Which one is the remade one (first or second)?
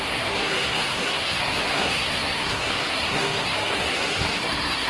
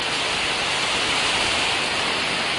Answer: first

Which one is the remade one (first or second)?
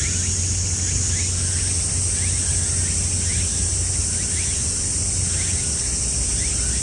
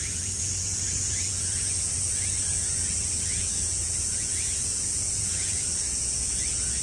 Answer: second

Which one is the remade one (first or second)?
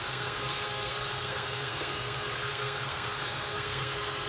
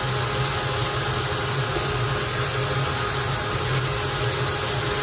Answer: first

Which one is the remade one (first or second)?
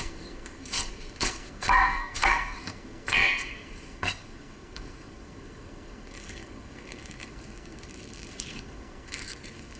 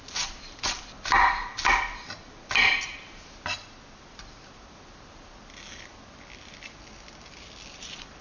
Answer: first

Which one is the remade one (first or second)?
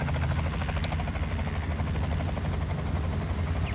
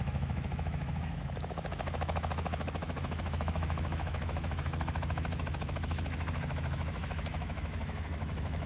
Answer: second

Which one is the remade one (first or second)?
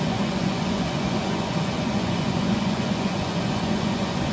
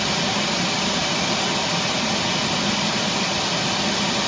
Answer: first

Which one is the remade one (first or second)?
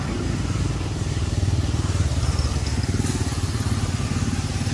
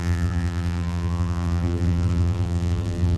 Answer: second